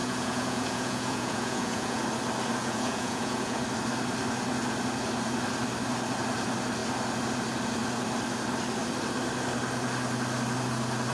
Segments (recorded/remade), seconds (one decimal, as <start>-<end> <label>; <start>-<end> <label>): 0.0-2.0 remade; 2.0-2.6 recorded; 2.6-3.6 remade; 3.6-11.1 recorded